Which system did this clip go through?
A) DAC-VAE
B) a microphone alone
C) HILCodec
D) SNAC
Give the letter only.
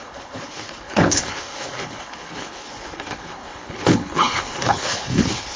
C